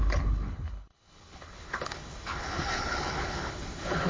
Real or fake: fake